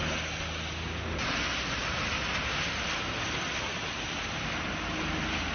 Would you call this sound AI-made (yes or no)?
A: no